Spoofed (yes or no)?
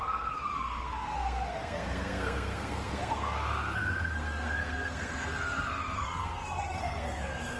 yes